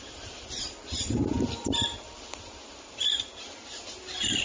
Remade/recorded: recorded